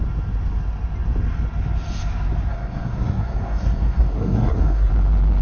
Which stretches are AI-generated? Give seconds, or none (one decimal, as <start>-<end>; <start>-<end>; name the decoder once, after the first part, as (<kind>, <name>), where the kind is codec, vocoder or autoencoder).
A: 2.5-4.9 (codec, SNAC)